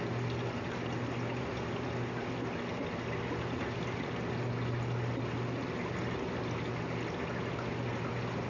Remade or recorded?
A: recorded